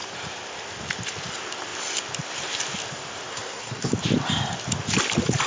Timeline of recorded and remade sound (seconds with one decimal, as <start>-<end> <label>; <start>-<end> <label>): 0.0-3.3 recorded; 3.3-3.9 remade; 3.9-5.5 recorded